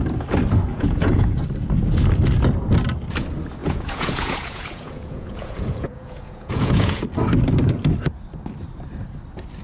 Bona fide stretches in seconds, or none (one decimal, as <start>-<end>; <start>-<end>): 0.0-0.7; 1.4-3.6; 7.0-9.6